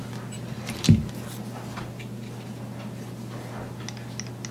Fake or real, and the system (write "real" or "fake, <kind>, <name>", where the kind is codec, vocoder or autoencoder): real